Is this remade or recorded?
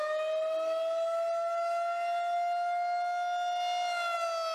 recorded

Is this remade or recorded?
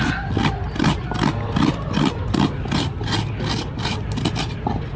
recorded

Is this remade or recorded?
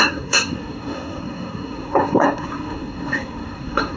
remade